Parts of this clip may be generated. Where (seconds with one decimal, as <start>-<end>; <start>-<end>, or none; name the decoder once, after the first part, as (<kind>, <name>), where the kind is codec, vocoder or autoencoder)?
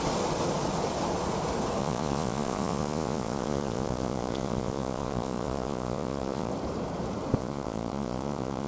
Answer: 1.8-6.5 (vocoder, Vocos); 7.4-8.7